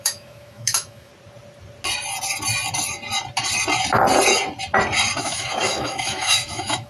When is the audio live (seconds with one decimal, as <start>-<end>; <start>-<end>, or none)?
1.1-5.2